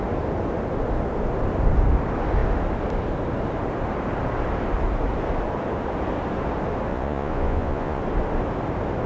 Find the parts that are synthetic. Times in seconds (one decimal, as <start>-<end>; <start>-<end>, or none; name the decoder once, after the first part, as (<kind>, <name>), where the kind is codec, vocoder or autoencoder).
6.9-8.0 (vocoder, Vocos)